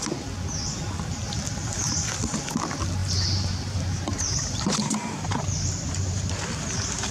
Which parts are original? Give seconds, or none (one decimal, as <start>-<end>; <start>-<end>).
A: 0.0-3.0; 6.3-7.1